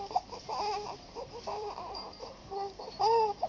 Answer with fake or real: fake